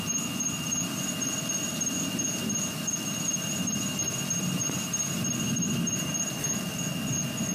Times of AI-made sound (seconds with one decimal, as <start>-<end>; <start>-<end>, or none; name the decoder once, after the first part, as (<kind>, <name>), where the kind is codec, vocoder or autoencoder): 4.0-6.1 (vocoder, BigVGAN v2)